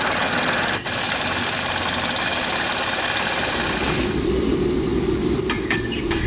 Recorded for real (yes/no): yes